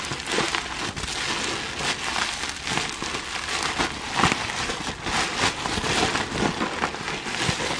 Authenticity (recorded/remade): recorded